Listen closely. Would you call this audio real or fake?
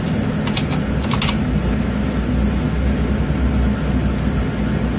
real